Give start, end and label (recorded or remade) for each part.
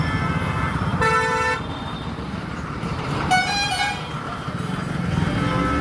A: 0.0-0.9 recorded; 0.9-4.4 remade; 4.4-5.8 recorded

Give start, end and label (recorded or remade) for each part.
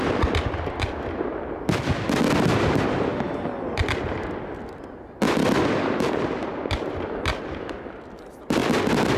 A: 0.0-9.2 recorded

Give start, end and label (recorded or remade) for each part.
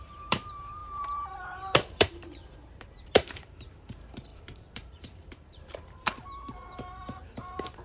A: 0.0-7.8 remade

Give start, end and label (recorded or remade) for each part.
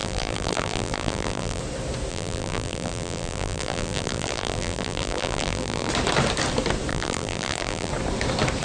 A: 0.0-1.6 remade; 1.6-2.1 recorded; 2.1-5.9 remade; 5.9-6.9 recorded; 6.9-7.9 remade; 7.9-8.6 recorded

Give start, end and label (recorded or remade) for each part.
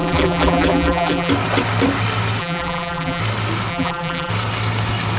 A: 0.0-1.3 remade; 1.3-2.4 recorded; 2.4-3.2 remade; 3.2-3.7 recorded; 3.7-4.3 remade; 4.3-5.2 recorded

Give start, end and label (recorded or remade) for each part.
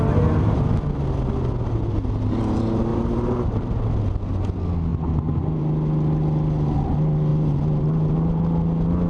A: 0.0-2.9 recorded; 2.9-3.8 remade; 3.8-7.3 recorded; 7.3-8.4 remade; 8.4-9.1 recorded